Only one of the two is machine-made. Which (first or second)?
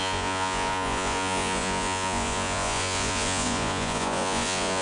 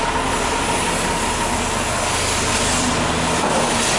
first